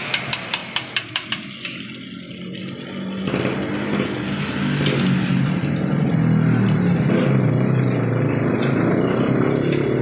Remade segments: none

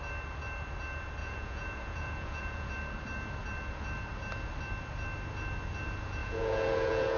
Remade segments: 1.2-2.7 (vocoder, Vocos); 6.2-7.2

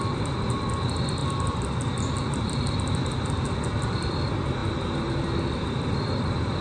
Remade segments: none

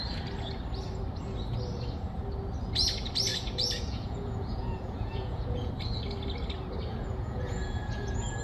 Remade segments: 3.3-5.7 (vocoder, Vocos); 6.9-8.4

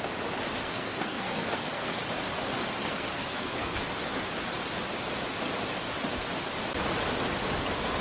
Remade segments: 0.6-2.0 (codec, SNAC); 2.8-3.8

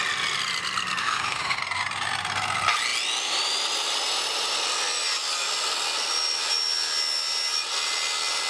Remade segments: 1.0-1.6 (autoencoder, DAC-VAE)

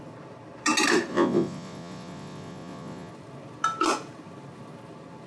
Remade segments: 1.1-3.1 (vocoder, Vocos)